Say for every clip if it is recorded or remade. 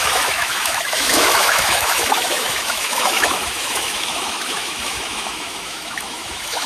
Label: remade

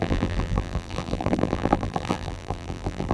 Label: remade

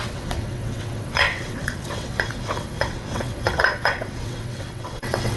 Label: remade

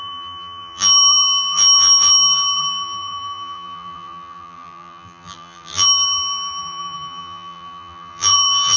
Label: remade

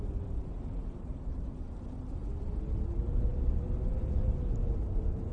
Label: recorded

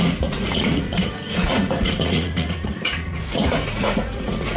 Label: remade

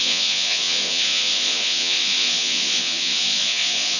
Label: remade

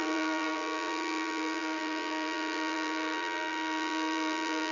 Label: remade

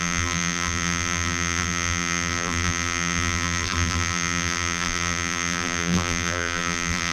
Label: remade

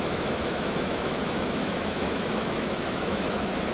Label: remade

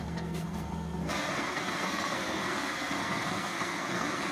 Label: remade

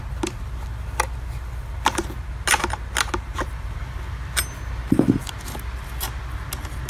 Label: recorded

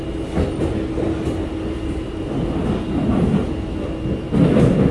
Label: recorded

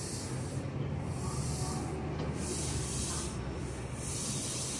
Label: recorded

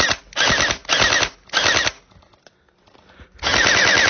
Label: recorded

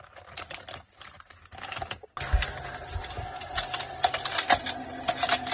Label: recorded